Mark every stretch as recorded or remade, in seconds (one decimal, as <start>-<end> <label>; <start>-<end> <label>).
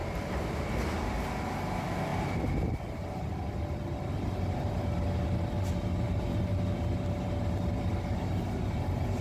0.0-1.1 remade; 1.1-5.9 recorded; 5.9-6.5 remade; 6.5-9.2 recorded